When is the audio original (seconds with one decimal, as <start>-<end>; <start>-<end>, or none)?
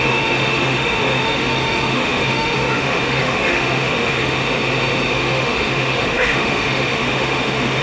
4.4-5.1